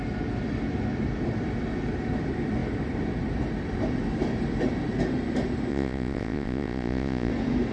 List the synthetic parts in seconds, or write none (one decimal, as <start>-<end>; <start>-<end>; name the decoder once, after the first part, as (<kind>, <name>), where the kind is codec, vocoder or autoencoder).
5.7-7.3 (vocoder, Vocos)